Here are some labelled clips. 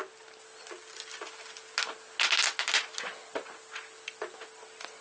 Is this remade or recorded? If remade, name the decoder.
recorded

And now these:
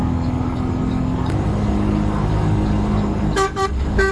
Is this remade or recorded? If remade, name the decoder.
remade, codec, DAC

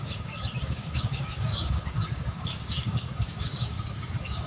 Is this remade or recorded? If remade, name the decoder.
remade, codec, DAC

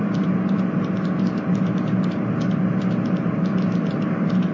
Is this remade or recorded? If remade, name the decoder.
recorded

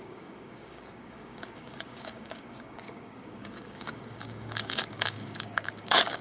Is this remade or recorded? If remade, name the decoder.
remade, codec, DAC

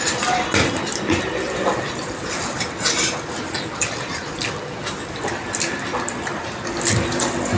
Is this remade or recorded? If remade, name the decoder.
recorded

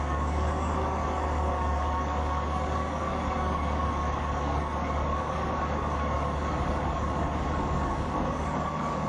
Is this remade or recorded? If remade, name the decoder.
remade, codec, DAC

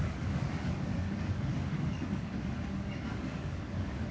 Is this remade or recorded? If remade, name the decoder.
remade, codec, DAC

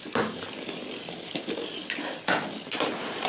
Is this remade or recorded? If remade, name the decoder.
recorded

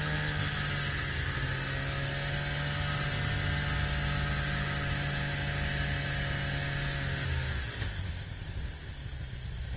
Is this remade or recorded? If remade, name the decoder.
recorded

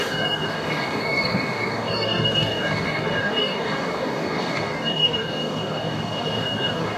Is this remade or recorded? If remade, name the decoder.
remade, codec, DAC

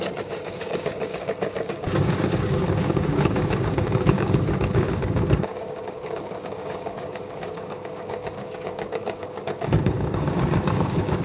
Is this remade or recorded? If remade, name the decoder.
remade, codec, DAC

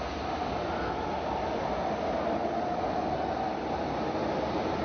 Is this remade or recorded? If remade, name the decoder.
recorded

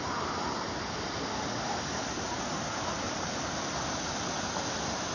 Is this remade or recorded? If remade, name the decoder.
recorded